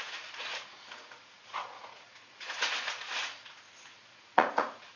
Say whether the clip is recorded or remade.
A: remade